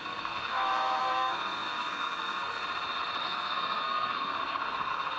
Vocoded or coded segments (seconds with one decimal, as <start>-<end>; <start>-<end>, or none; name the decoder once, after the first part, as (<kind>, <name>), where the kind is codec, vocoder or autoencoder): 0.0-2.6 (codec, SNAC); 3.2-5.2